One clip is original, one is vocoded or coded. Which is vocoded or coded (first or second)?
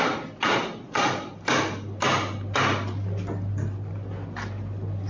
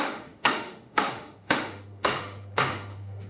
second